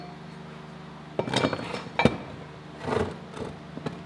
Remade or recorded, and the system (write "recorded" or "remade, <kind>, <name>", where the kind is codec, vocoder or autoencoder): recorded